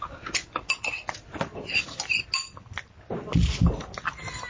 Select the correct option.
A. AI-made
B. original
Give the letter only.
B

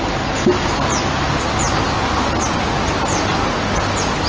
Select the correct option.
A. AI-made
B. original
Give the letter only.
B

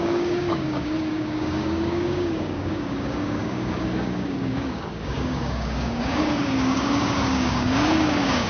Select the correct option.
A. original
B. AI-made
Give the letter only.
B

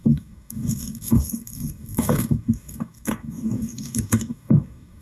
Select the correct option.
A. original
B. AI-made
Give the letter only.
B